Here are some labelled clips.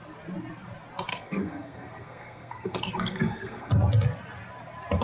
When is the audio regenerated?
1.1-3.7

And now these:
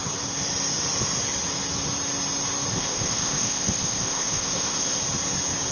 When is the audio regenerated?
2.7-5.0

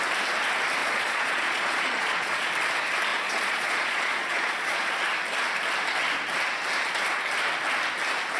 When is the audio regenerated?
0.8-2.5; 3.1-5.0